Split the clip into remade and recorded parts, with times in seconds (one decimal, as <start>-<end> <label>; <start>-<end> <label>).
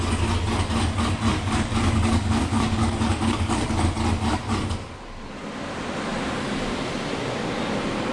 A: 0.0-1.3 recorded; 1.3-3.8 remade; 3.8-8.1 recorded